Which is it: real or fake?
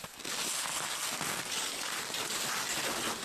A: real